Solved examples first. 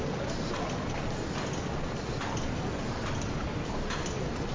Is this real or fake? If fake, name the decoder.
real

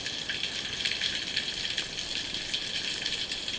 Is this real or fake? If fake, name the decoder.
real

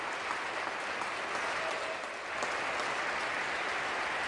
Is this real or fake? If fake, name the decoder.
real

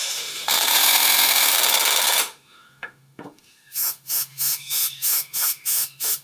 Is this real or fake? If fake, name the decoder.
fake, autoencoder, DAC-VAE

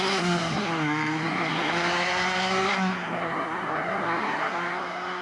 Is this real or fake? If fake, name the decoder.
fake, codec, SNAC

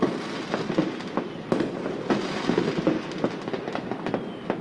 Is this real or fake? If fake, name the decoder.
real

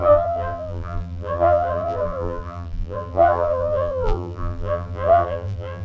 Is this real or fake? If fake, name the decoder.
fake, vocoder, BigVGAN v2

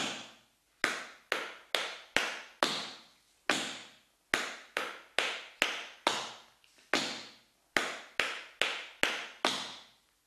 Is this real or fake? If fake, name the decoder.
real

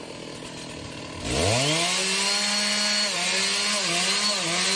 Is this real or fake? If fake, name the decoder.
real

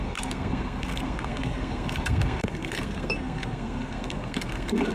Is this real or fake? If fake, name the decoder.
fake, codec, SNAC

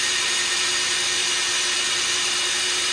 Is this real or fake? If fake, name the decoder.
real